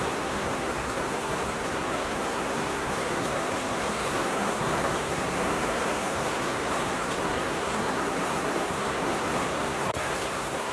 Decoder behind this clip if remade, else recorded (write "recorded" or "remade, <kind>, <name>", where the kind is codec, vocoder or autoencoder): remade, codec, SNAC